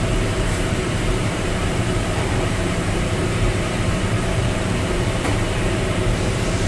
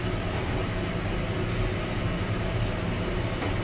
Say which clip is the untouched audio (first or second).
second